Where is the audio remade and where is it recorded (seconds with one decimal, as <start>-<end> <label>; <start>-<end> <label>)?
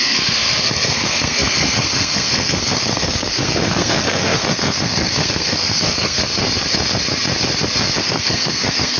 0.0-6.3 remade; 6.3-8.0 recorded; 8.0-9.0 remade